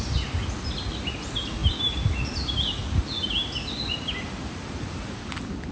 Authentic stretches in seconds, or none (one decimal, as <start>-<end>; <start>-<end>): 0.0-5.7